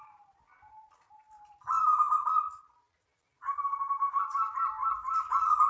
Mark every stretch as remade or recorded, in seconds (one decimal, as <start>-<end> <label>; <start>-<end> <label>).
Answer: 0.0-5.7 remade